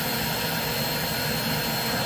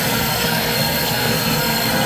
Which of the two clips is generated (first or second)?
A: second